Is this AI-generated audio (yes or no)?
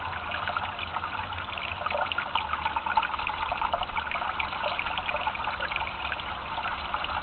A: no